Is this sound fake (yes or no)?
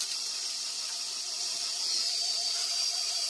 yes